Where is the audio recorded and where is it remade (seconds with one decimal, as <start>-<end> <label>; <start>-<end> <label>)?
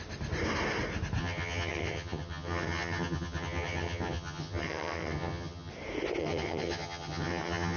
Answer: 0.0-1.2 recorded; 1.2-5.7 remade; 5.7-6.2 recorded; 6.2-7.8 remade